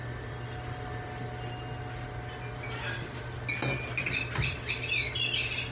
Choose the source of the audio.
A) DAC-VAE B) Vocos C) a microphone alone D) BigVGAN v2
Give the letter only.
C